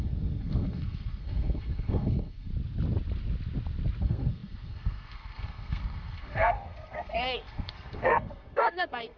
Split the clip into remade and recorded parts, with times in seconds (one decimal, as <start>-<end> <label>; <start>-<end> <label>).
0.0-2.5 remade; 2.5-4.0 recorded; 4.0-9.2 remade